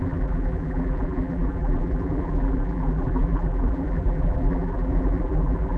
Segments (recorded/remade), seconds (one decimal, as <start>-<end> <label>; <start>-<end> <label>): 0.0-5.8 remade